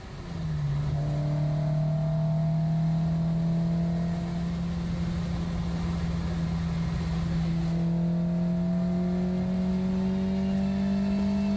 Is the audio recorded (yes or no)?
yes